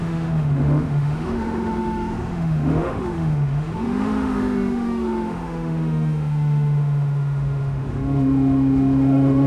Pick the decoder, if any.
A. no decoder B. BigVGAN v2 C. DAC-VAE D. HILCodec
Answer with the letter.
C